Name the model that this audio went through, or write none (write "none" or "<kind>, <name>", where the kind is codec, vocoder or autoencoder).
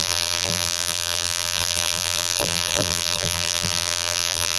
vocoder, BigVGAN v2